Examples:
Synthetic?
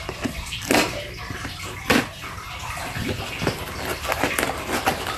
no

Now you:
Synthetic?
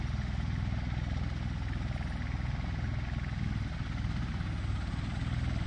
no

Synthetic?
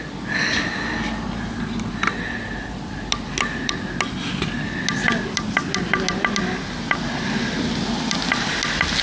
no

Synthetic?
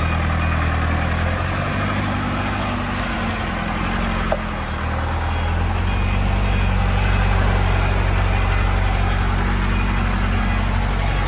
no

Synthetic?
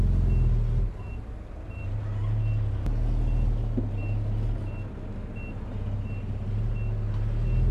no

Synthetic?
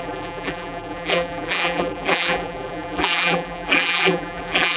yes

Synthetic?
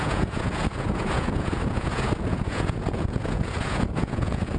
yes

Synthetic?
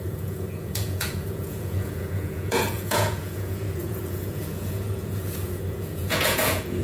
yes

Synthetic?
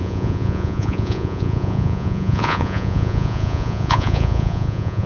yes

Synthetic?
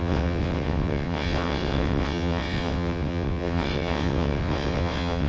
yes